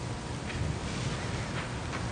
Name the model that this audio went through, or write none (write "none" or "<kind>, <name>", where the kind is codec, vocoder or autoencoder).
none